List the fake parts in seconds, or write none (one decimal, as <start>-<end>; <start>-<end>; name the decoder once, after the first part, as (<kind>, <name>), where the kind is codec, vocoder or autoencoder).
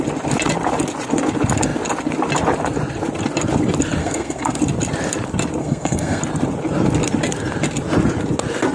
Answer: 4.0-4.6 (codec, SNAC); 5.6-6.2